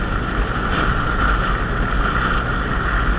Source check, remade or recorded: recorded